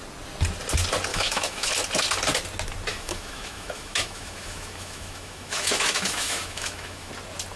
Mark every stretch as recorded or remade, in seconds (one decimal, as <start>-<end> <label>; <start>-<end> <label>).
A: 0.0-1.1 recorded; 1.1-1.7 remade; 1.7-2.9 recorded; 2.9-7.1 remade; 7.1-7.6 recorded

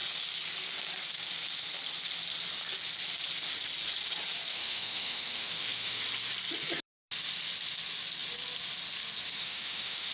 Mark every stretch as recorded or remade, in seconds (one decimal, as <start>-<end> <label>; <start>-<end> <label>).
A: 0.0-4.5 recorded; 4.5-6.0 remade; 6.0-9.4 recorded; 9.4-10.1 remade